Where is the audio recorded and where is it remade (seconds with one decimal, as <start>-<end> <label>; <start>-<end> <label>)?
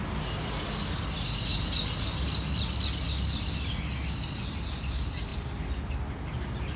0.0-6.8 recorded